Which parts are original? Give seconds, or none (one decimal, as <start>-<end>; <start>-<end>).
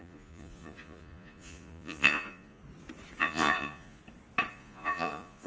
2.6-3.2; 4.0-4.5